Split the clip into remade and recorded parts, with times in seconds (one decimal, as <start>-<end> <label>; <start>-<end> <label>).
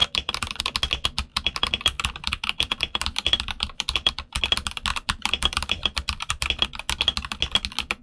0.0-0.6 remade; 0.6-1.3 recorded; 1.3-4.4 remade; 4.4-4.9 recorded; 4.9-6.5 remade; 6.5-8.0 recorded